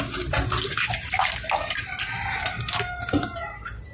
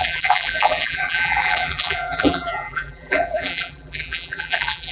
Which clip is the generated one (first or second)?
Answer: second